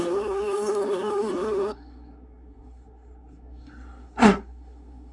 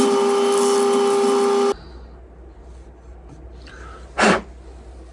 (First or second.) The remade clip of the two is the first